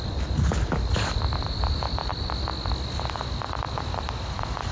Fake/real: real